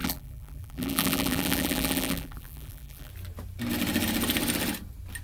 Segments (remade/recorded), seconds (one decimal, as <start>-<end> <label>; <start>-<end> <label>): 0.0-3.1 remade; 3.1-5.2 recorded